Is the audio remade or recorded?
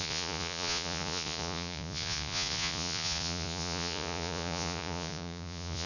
remade